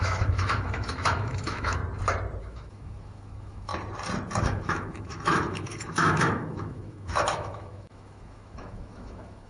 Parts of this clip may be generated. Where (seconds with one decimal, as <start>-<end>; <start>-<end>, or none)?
0.0-1.8; 2.4-3.7; 4.4-9.5